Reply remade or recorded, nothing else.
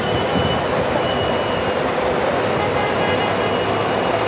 recorded